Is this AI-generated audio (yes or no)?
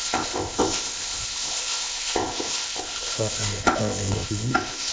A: yes